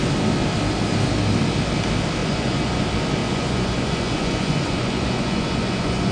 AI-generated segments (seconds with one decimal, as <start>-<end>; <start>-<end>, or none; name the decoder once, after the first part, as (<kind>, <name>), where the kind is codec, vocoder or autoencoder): 2.2-2.8 (vocoder, Vocos); 3.2-6.1